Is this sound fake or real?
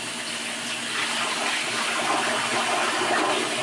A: real